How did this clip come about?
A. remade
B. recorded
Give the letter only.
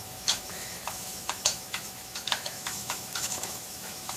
A